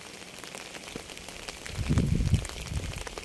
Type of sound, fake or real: real